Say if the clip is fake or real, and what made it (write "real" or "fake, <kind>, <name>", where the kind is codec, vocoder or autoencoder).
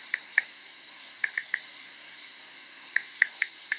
fake, codec, SNAC